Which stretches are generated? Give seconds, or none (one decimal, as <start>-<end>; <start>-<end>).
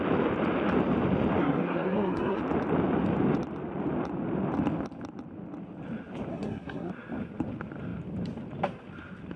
1.4-2.4; 6.3-6.9